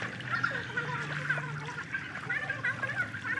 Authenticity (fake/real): real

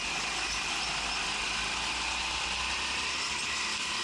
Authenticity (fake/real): real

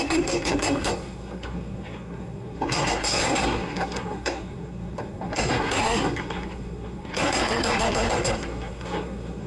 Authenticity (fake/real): fake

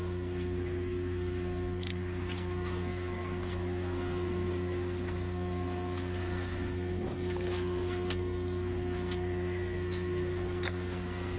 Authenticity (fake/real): fake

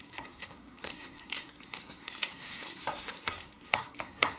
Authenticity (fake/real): fake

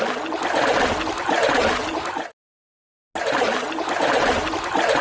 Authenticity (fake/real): real